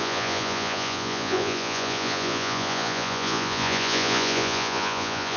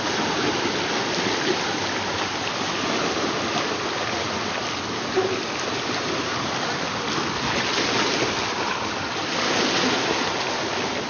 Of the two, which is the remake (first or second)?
first